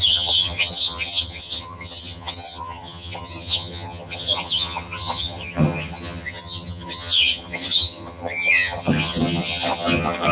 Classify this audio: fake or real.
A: fake